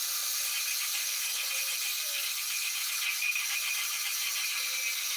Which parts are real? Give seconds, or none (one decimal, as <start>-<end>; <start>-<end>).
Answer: 0.0-1.0; 1.5-1.9; 2.4-5.2